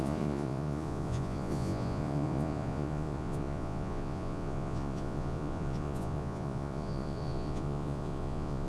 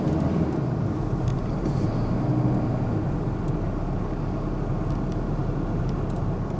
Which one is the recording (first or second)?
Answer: second